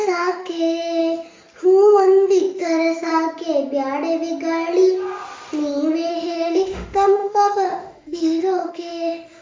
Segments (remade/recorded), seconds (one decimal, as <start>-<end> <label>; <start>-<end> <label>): 0.0-1.0 remade; 1.0-1.6 recorded; 1.6-3.1 remade; 3.1-6.1 recorded; 6.1-9.4 remade